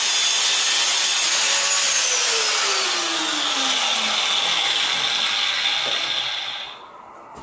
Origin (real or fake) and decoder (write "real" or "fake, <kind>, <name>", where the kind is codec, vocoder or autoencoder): real